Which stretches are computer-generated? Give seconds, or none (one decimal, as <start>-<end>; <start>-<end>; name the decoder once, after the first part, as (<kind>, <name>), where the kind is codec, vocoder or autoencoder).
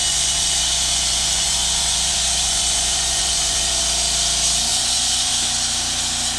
0.0-3.8 (vocoder, Vocos); 4.7-5.3